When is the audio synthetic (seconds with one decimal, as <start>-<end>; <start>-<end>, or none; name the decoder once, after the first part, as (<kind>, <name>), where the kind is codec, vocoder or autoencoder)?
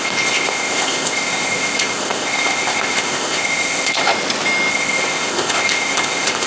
0.0-4.0 (codec, ZipCodec); 4.7-6.5